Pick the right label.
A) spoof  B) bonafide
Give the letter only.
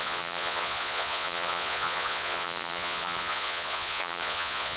A